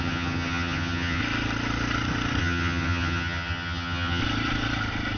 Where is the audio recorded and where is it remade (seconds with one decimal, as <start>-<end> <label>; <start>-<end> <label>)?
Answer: 0.0-1.2 remade; 1.2-2.4 recorded; 2.4-4.2 remade; 4.2-5.2 recorded